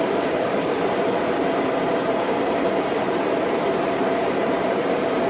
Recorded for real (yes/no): no